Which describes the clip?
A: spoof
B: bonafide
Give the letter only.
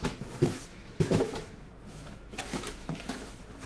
A